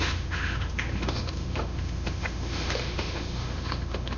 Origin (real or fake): fake